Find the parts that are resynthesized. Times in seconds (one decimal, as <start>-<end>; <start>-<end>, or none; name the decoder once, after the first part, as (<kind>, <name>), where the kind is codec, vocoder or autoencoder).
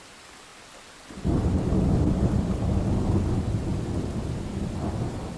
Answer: none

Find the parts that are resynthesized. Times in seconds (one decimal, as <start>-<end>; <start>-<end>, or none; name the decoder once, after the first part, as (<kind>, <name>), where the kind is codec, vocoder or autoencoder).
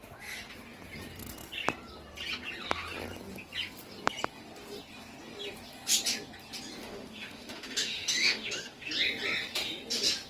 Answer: 6.8-8.9 (autoencoder, DAC-VAE)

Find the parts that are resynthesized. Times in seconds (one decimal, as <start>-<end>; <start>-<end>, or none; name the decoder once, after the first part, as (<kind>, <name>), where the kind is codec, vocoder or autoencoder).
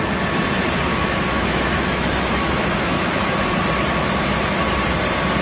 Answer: 0.9-3.4 (autoencoder, DAC-VAE)